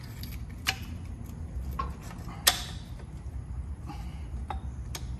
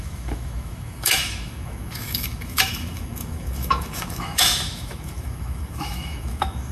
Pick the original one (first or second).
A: first